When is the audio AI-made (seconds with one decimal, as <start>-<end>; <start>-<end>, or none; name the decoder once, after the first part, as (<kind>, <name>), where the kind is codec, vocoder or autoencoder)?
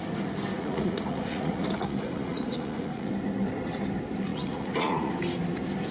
0.5-3.1 (vocoder, Vocos); 4.3-5.1